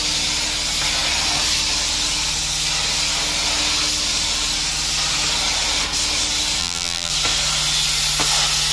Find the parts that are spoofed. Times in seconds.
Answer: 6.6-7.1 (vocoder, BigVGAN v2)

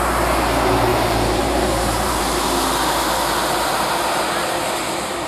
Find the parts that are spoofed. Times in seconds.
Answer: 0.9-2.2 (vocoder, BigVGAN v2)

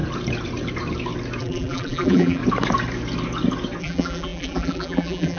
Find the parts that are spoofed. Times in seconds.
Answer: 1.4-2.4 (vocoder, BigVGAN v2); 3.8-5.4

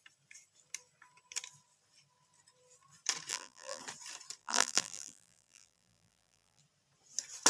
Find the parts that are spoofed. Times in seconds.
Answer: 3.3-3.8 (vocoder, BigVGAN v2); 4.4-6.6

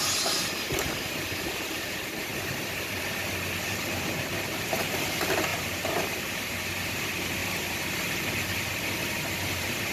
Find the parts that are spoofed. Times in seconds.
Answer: 0.0-2.3 (vocoder, BigVGAN v2); 3.6-7.4; 9.3-9.9

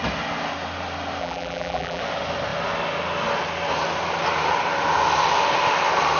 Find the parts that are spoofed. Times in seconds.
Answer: 1.2-2.0 (vocoder, BigVGAN v2)